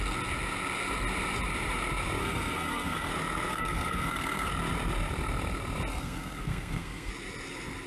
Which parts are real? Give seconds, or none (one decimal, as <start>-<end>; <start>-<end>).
0.0-2.2; 3.1-3.5; 4.5-5.9; 7.1-7.9